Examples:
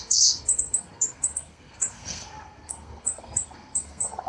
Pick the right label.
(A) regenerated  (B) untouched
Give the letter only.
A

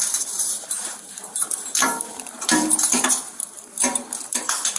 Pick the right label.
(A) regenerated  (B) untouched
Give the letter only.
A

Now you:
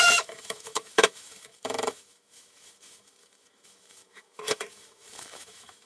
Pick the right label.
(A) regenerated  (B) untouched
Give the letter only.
A